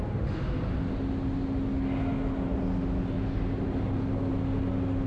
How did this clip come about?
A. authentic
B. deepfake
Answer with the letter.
A